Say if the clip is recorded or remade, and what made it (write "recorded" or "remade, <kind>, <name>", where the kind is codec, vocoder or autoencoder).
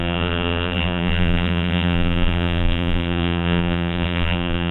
remade, vocoder, BigVGAN v2